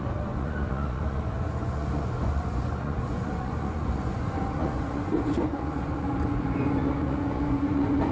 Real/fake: fake